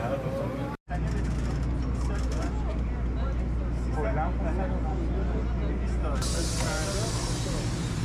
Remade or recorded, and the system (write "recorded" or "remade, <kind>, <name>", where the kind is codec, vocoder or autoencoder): recorded